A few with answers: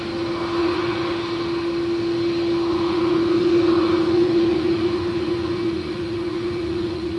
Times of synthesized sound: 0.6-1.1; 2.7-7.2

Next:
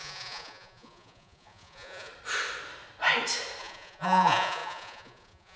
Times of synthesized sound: 0.0-2.1; 3.6-5.6

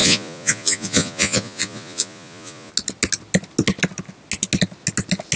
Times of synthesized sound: 0.0-2.7

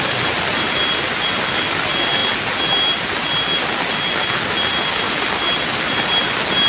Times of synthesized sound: none

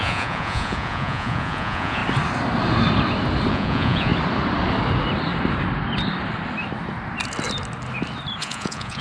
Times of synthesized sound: 0.0-2.0; 3.5-4.1; 8.4-9.0

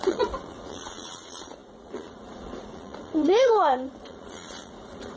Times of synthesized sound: 0.0-5.2

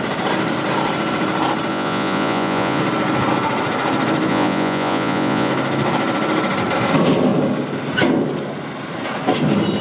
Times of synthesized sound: 1.7-2.8; 4.3-5.5